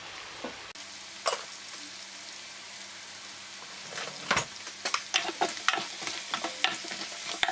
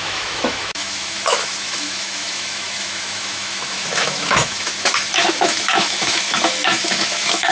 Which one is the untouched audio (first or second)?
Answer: first